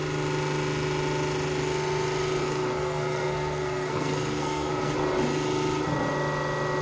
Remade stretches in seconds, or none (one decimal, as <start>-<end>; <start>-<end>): 2.4-4.9